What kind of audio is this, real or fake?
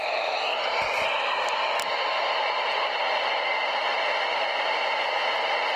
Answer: real